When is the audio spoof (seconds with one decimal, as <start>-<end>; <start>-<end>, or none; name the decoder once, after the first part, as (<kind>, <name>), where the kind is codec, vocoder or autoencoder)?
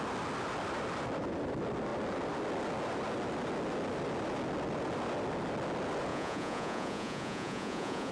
6.1-8.1 (vocoder, Vocos)